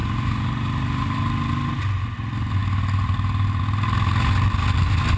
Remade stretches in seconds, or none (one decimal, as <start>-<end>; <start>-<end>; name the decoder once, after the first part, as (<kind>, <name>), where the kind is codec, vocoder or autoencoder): 0.0-1.7 (vocoder, BigVGAN v2)